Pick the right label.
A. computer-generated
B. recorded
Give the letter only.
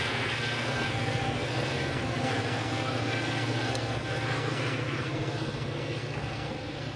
A